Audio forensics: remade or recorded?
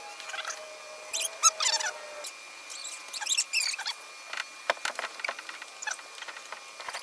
recorded